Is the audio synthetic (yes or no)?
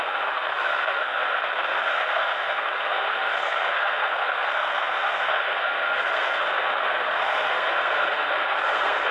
yes